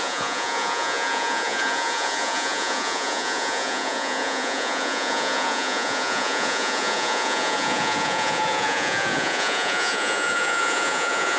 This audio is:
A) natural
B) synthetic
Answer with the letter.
B